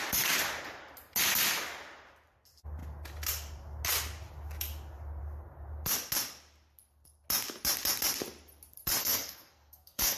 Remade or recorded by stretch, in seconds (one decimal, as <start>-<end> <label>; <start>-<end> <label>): 0.0-9.0 recorded; 9.0-10.2 remade